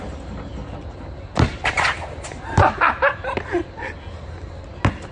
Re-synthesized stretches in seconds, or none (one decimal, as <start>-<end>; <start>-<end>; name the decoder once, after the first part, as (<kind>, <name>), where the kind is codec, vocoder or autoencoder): none